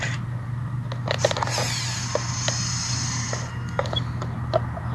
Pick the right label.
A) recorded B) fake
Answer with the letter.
A